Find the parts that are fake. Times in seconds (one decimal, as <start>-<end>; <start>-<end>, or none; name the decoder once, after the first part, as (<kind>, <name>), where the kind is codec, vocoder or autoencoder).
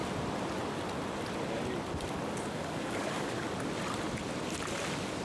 2.6-3.5 (codec, DAC)